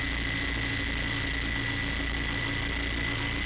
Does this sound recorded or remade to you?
recorded